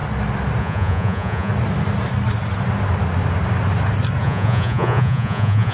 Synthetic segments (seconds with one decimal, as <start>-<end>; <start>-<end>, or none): 0.6-1.5; 4.2-5.7